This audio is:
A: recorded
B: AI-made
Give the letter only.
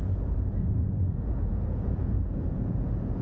B